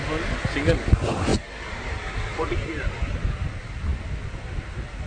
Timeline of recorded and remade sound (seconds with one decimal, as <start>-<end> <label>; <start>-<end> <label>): 0.0-1.3 recorded; 1.3-2.7 remade; 2.7-3.9 recorded; 3.9-5.1 remade